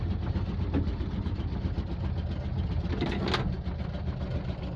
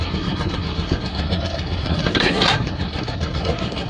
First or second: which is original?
first